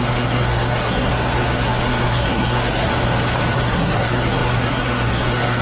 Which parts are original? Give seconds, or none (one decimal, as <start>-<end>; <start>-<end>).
2.9-3.5